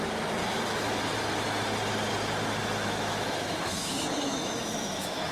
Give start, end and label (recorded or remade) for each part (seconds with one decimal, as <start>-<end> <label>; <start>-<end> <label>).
0.0-0.4 recorded; 0.4-1.0 remade; 1.0-2.6 recorded; 2.6-5.3 remade